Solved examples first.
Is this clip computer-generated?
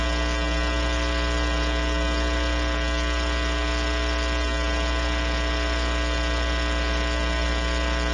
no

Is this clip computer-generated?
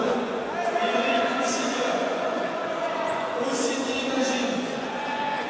yes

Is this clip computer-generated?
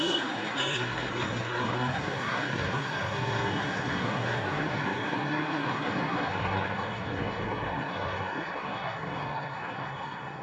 yes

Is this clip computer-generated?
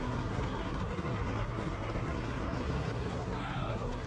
yes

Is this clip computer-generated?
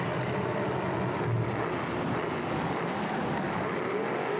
no